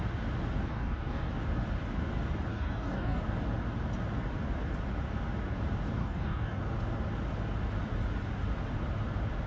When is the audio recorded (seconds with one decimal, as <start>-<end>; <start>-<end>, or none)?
0.0-0.7; 1.3-2.5; 3.2-6.0; 6.6-9.5